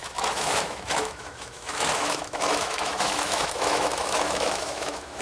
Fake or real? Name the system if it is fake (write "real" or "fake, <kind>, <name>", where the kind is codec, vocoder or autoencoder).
fake, autoencoder, DAC-VAE